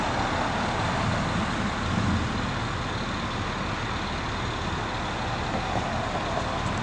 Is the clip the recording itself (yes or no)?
yes